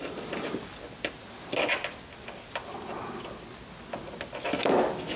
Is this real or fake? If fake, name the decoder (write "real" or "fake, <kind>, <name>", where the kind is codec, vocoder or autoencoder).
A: real